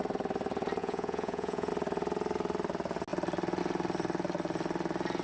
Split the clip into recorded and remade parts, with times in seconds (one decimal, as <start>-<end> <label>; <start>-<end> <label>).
0.0-0.8 recorded; 0.8-1.7 remade; 1.7-5.2 recorded